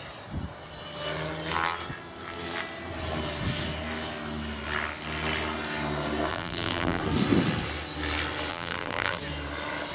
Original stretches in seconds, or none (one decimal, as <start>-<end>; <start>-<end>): 0.0-6.3; 7.0-8.5; 9.2-9.9